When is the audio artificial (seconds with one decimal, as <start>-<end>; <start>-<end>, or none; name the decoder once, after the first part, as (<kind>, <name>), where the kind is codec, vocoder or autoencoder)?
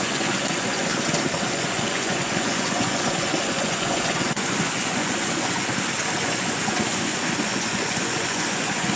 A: 0.0-0.9 (vocoder, Vocos); 1.5-5.7; 6.2-9.0